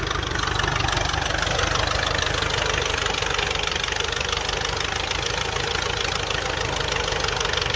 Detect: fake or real real